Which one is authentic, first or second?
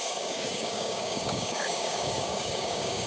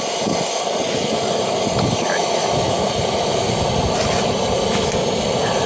second